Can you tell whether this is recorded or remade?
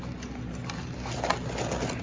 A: recorded